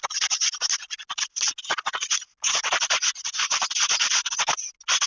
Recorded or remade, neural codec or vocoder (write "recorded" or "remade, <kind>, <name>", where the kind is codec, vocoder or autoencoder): recorded